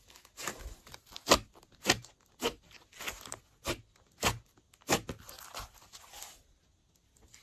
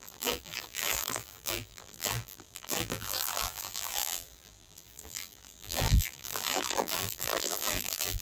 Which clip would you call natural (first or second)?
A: first